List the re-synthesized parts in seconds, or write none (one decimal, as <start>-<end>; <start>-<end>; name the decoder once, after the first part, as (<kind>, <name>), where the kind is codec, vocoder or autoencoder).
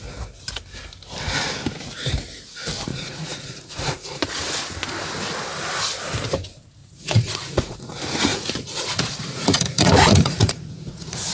2.9-4.2 (vocoder, Vocos); 6.8-7.9; 8.3-11.3